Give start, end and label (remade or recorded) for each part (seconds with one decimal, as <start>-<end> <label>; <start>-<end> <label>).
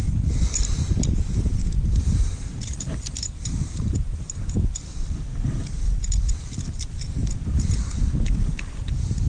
0.0-1.6 recorded; 1.6-4.7 remade; 4.7-5.3 recorded; 5.3-6.5 remade; 6.5-7.2 recorded; 7.2-8.5 remade; 8.5-9.3 recorded